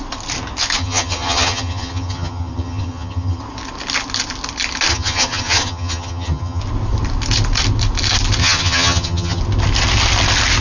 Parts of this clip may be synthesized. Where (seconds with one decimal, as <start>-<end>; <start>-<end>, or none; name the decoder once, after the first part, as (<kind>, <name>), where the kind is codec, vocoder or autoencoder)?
0.8-3.4 (vocoder, HiFi-GAN); 4.9-6.6; 8.4-9.4